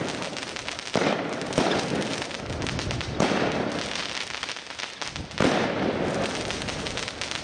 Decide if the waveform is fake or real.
real